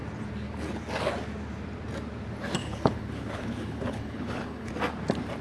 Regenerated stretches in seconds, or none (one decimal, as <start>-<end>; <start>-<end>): 2.6-4.7